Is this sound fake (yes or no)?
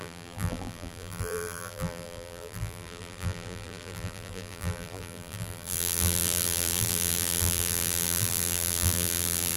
yes